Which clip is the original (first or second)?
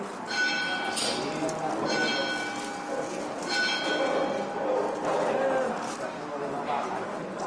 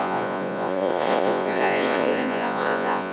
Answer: first